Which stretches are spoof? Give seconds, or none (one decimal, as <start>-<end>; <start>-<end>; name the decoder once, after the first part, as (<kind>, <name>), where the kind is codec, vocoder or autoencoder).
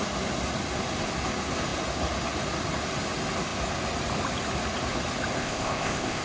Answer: 5.4-6.2 (codec, ZipCodec)